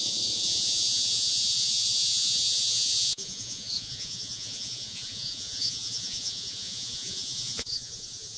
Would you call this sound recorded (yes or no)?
no